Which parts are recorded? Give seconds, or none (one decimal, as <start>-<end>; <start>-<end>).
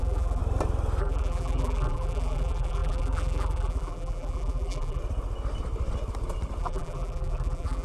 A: 0.4-1.0; 5.0-6.6